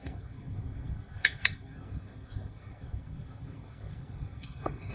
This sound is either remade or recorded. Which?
remade